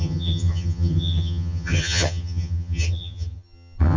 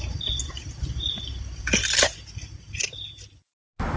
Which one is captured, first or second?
second